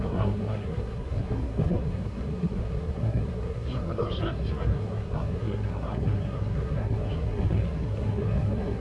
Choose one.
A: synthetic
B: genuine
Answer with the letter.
A